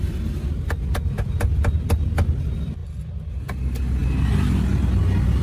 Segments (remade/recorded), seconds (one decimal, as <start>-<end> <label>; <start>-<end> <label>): 0.0-5.4 recorded